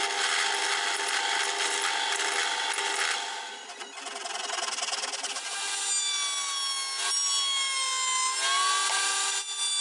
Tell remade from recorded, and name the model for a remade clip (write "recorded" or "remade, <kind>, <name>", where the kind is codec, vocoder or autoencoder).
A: recorded